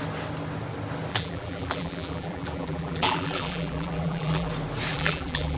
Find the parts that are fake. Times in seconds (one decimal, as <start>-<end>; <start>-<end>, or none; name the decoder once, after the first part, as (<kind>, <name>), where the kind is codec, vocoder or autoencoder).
1.1-4.5 (vocoder, BigVGAN v2); 4.9-5.6